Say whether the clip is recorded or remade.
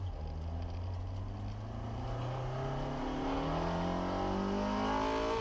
recorded